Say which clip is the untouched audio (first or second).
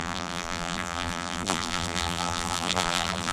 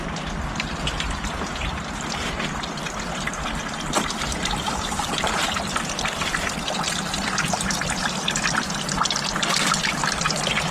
second